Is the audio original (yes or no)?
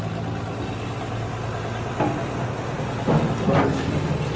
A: yes